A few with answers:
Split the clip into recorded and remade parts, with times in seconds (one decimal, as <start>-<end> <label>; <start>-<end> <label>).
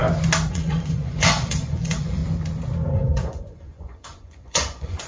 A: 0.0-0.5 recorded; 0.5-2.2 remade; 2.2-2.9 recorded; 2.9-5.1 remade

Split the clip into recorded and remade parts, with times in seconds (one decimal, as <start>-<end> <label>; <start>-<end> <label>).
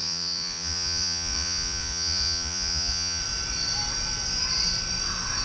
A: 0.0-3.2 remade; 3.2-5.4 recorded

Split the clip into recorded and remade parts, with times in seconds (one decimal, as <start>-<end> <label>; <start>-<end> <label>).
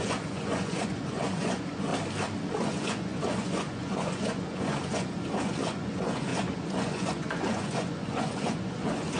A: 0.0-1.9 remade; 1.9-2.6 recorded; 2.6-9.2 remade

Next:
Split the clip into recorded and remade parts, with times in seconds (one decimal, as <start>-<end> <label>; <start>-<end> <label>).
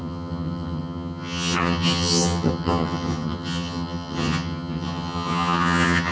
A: 0.0-6.1 remade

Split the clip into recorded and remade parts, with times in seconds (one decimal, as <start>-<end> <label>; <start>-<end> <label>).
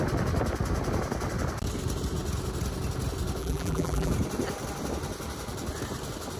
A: 0.0-3.4 recorded; 3.4-4.1 remade; 4.1-6.4 recorded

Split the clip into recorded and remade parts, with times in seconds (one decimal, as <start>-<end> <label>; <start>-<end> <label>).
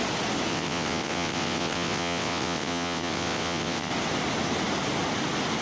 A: 0.0-0.5 recorded; 0.5-3.9 remade; 3.9-5.6 recorded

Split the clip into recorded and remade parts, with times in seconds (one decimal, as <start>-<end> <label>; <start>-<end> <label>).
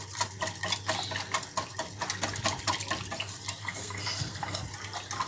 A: 0.0-3.6 recorded; 3.6-4.6 remade; 4.6-5.3 recorded